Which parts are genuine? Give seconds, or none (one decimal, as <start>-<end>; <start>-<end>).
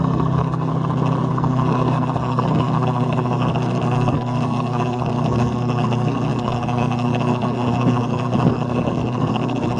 0.7-1.3